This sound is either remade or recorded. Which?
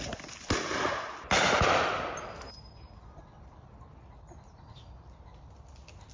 recorded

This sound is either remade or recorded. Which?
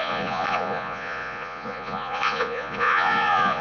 remade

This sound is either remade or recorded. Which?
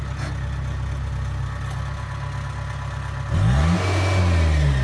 recorded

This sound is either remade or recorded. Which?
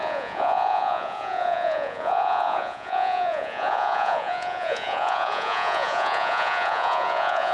remade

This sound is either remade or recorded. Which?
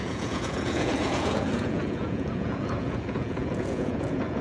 remade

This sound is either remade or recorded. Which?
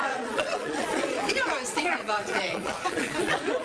remade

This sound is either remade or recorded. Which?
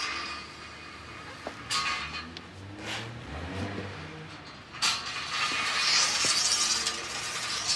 recorded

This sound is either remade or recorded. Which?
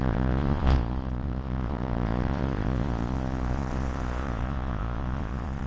remade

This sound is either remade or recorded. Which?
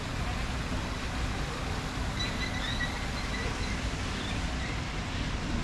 recorded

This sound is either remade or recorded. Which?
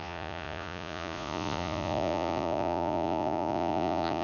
remade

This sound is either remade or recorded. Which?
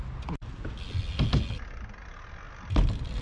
recorded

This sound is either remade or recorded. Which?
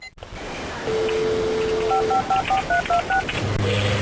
recorded